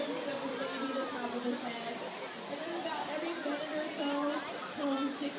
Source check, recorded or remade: recorded